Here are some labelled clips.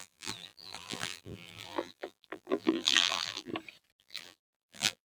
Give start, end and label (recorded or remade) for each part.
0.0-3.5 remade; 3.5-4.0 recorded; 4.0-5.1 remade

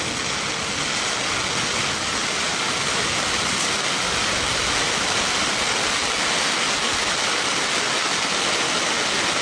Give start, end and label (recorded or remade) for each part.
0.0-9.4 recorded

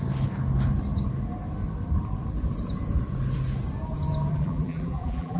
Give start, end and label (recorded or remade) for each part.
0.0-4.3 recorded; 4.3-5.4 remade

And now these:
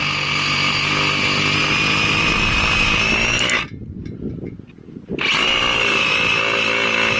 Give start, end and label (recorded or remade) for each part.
0.0-7.2 recorded

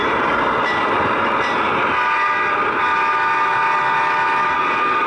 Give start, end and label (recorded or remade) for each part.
0.0-1.7 remade; 1.7-5.1 recorded

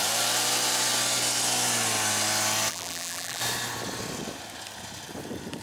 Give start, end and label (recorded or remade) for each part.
0.0-2.7 recorded; 2.7-3.4 remade; 3.4-5.6 recorded

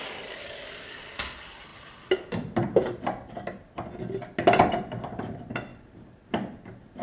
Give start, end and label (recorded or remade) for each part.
0.0-1.7 recorded; 1.7-2.9 remade; 2.9-5.7 recorded; 5.7-7.0 remade